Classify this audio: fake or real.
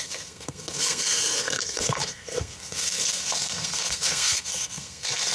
fake